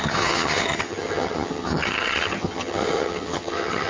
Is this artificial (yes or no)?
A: yes